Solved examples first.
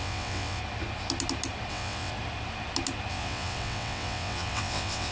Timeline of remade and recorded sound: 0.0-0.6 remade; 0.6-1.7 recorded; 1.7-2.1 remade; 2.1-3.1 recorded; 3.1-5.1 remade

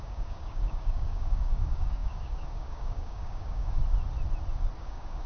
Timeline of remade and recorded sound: 0.0-3.8 remade; 3.8-4.8 recorded; 4.8-5.3 remade